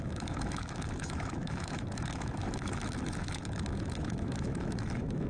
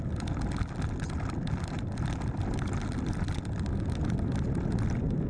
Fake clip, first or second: first